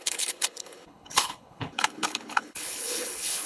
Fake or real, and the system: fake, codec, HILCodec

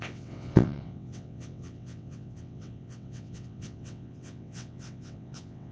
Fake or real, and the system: fake, vocoder, WaveNeXt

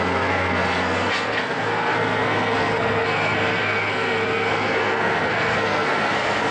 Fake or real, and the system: fake, codec, SNAC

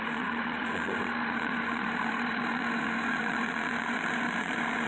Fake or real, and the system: fake, vocoder, Vocos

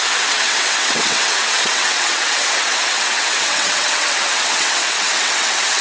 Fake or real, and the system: fake, vocoder, WaveNeXt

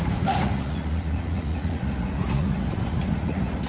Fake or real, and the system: fake, vocoder, Vocos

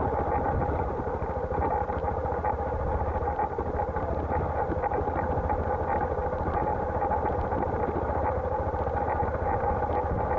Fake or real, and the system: real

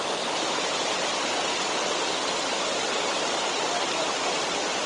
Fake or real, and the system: real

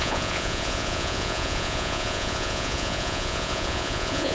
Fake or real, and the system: fake, vocoder, Vocos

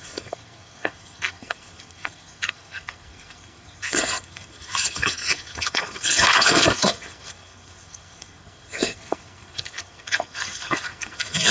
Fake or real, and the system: fake, codec, SNAC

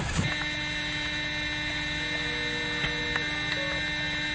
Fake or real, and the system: real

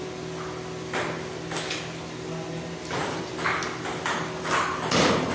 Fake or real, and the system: real